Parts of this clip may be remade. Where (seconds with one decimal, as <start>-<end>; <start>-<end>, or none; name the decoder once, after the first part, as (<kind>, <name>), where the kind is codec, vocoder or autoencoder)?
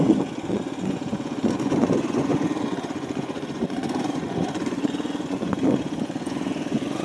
0.0-7.0 (vocoder, Vocos)